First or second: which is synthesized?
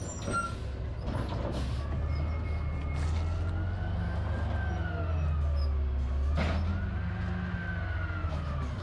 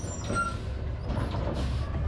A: second